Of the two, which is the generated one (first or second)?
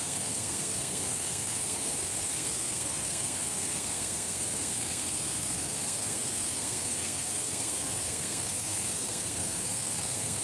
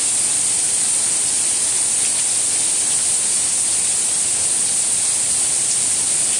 first